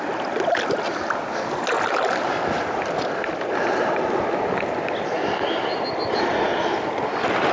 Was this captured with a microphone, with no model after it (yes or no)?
yes